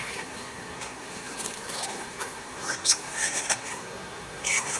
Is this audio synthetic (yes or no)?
yes